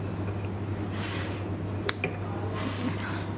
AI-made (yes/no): no